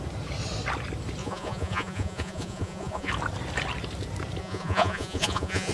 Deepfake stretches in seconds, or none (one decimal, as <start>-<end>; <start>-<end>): 1.2-3.1; 4.4-5.7